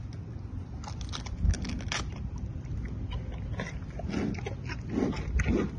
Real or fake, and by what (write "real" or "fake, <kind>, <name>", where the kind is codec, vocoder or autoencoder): real